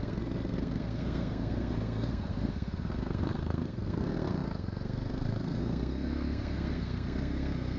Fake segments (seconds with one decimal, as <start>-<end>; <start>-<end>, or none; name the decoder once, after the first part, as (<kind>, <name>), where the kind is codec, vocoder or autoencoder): 0.0-7.8 (codec, SNAC)